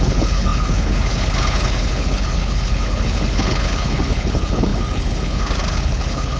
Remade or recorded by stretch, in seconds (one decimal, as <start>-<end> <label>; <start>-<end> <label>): 0.0-6.4 remade

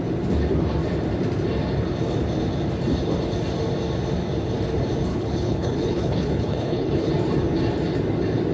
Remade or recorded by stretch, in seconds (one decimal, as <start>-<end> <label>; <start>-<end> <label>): 0.0-5.1 recorded; 5.1-7.1 remade; 7.1-8.5 recorded

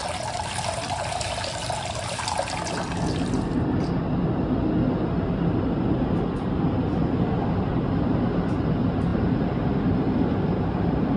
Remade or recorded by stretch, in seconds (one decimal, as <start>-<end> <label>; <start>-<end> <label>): 0.0-11.2 recorded

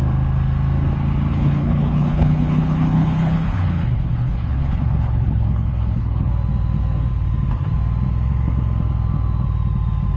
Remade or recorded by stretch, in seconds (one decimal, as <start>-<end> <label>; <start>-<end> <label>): 0.0-1.3 recorded; 1.3-6.3 remade; 6.3-10.2 recorded

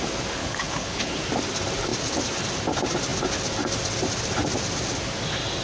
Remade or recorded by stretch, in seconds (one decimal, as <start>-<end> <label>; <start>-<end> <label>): 0.0-0.4 recorded; 0.4-1.2 remade; 1.2-5.6 recorded

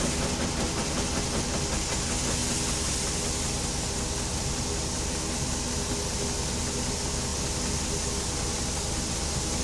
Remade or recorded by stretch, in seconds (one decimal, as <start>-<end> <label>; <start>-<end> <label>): 0.0-9.6 recorded